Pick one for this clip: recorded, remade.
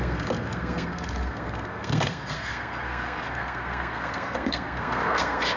remade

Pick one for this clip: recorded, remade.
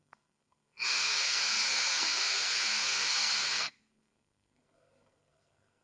remade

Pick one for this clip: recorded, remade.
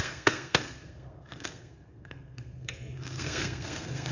remade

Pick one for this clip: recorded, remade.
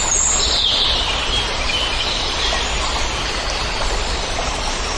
recorded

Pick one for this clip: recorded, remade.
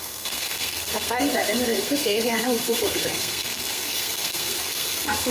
remade